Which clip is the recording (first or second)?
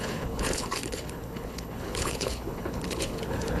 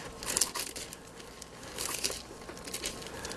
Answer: second